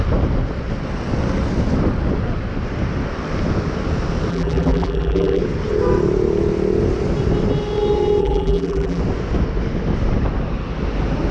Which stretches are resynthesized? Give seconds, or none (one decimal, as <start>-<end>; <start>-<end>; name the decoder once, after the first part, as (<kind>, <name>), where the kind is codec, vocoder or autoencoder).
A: 4.3-5.4 (vocoder, BigVGAN v2); 8.2-9.0